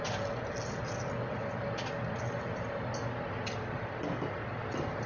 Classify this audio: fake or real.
real